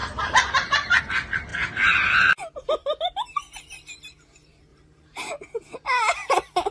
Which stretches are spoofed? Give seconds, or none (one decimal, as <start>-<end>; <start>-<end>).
0.0-1.0; 1.5-2.3; 4.7-5.3